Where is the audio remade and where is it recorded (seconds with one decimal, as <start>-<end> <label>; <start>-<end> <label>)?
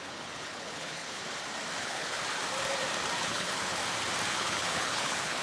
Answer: 0.0-1.2 remade; 1.2-1.8 recorded; 1.8-2.2 remade; 2.2-3.2 recorded; 3.2-3.8 remade; 3.8-4.3 recorded; 4.3-5.4 remade